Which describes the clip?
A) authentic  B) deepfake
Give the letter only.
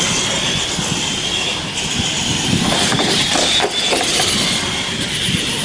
A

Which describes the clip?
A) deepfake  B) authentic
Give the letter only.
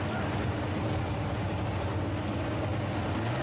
B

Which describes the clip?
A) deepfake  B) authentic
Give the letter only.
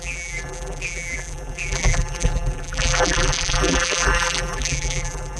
A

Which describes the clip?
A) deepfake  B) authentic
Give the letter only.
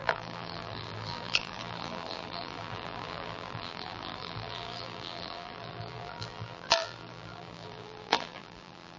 A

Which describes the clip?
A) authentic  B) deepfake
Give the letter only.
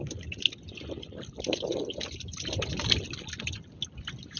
A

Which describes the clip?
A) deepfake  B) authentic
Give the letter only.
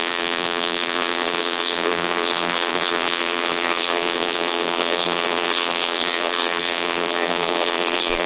A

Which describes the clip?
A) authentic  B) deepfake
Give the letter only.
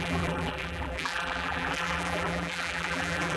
B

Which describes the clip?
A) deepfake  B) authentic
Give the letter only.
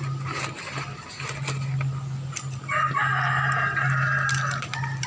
B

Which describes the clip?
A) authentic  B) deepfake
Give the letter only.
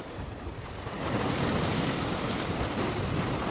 B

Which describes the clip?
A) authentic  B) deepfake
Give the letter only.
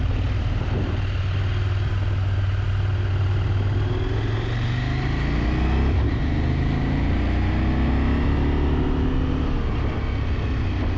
A